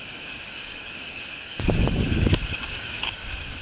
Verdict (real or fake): fake